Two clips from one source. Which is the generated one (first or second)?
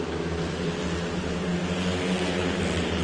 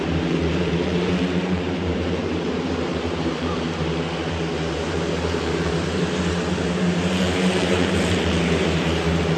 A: second